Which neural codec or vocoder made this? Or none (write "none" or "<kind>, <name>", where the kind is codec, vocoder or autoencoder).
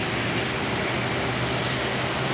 none